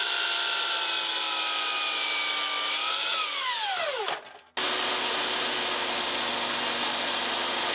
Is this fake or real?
real